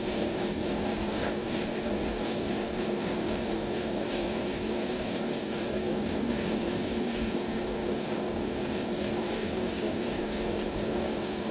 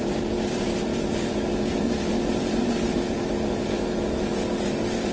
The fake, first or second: first